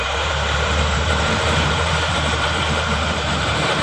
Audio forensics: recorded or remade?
remade